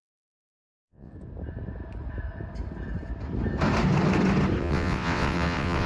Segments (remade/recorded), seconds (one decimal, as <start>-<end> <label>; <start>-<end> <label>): 0.0-1.1 remade; 1.1-4.6 recorded; 4.6-5.9 remade